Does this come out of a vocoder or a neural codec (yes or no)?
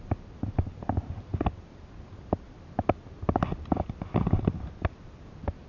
no